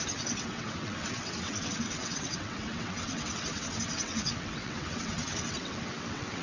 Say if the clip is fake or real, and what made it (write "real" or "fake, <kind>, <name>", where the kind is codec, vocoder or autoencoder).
fake, vocoder, WaveNeXt